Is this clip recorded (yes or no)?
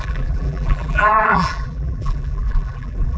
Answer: no